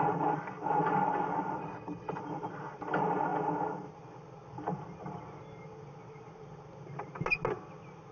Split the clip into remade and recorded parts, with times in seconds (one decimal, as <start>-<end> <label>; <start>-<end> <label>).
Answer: 0.0-1.6 recorded; 1.6-2.2 remade; 2.2-8.1 recorded